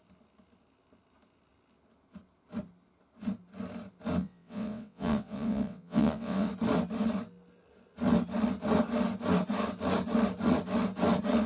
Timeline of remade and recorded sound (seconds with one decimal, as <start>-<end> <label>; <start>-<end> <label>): 0.0-4.2 recorded; 4.2-6.5 remade; 6.5-11.5 recorded